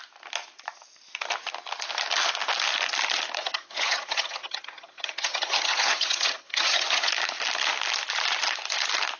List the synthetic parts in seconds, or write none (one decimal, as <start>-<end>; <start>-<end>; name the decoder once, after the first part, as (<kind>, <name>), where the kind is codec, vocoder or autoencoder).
3.4-7.1 (vocoder, HiFi-GAN)